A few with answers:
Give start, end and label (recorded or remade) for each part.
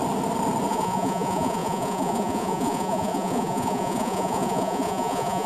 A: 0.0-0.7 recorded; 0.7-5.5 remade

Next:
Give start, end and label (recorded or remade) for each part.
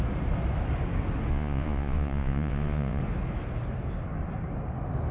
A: 0.0-1.3 recorded; 1.3-3.0 remade; 3.0-5.1 recorded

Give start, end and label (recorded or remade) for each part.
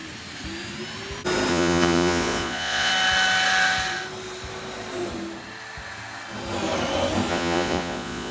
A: 0.0-1.5 recorded; 1.5-2.9 remade; 2.9-7.3 recorded; 7.3-8.3 remade